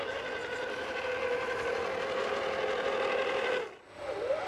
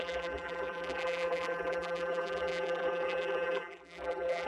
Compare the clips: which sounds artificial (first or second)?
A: second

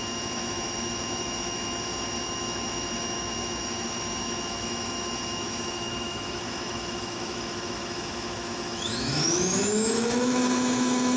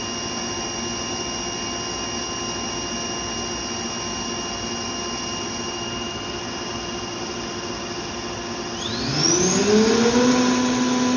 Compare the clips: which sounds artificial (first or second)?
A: first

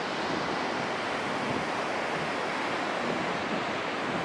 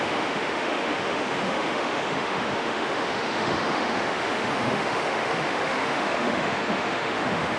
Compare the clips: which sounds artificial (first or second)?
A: second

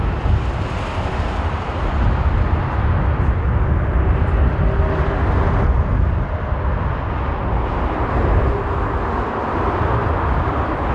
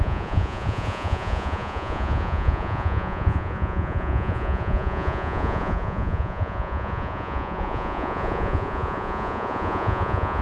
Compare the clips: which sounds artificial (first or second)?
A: second